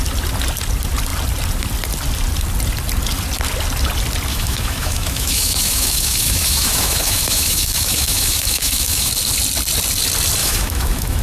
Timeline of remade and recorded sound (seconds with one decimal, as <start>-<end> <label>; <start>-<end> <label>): 0.0-4.3 recorded; 4.3-9.1 remade; 9.1-10.4 recorded; 10.4-11.2 remade